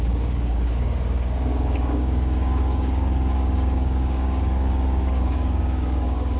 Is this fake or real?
fake